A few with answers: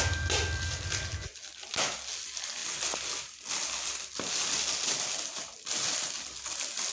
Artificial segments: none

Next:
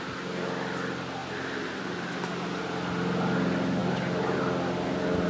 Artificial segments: none